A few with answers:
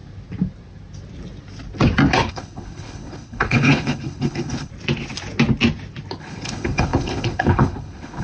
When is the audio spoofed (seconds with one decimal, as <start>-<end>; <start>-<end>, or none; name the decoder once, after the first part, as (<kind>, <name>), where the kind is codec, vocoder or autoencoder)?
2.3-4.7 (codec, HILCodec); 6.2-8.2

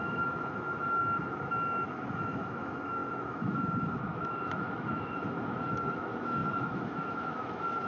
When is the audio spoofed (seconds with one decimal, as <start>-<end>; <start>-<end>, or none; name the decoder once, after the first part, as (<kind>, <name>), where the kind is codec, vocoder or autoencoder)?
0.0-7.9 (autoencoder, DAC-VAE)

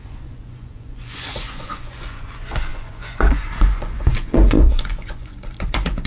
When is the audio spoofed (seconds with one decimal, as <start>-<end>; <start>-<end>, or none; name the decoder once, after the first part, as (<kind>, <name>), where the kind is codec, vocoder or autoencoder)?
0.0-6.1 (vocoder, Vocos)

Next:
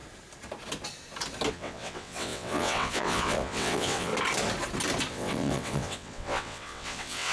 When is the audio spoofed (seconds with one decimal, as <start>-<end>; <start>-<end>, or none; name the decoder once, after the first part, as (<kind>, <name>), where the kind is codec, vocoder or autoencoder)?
1.5-4.1 (vocoder, WaveNeXt); 5.1-7.3

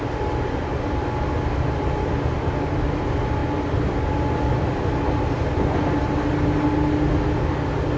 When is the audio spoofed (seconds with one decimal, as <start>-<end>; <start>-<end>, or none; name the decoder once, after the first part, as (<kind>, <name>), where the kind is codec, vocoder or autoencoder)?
none